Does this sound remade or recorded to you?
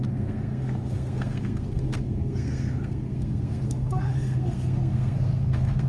remade